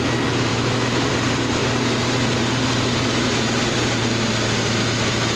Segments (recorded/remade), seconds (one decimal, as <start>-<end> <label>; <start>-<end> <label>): 0.0-0.5 recorded; 0.5-1.1 remade; 1.1-5.4 recorded